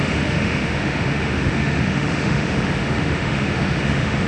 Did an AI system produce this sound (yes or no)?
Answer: yes